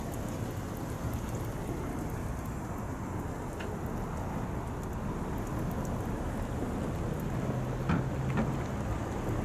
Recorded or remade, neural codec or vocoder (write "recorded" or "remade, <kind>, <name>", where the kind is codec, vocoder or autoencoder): recorded